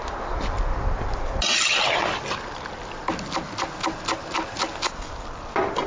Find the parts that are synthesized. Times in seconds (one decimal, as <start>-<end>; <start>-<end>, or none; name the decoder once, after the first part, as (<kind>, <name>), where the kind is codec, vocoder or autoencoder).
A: none